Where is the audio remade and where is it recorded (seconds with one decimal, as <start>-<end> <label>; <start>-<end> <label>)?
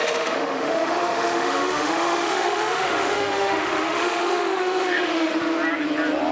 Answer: 0.0-5.3 remade; 5.3-6.3 recorded